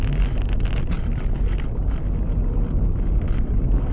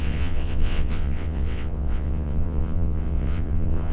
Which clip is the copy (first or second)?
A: second